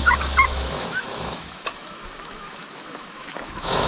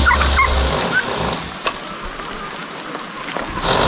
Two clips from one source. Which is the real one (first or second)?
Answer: second